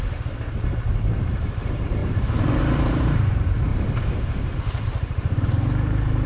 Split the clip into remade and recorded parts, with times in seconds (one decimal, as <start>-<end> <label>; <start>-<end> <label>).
0.0-2.0 remade; 2.0-2.6 recorded; 2.6-3.7 remade; 3.7-4.8 recorded; 4.8-6.3 remade

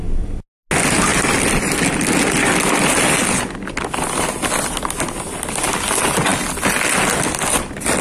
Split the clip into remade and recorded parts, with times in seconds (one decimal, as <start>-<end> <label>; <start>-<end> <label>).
0.0-8.0 recorded